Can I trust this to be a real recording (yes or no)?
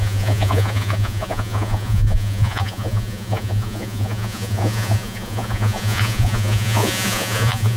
no